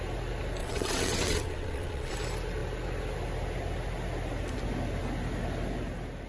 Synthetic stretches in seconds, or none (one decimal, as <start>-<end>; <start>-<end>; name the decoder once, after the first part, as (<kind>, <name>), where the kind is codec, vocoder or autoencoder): 0.6-2.1 (vocoder, WaveNeXt)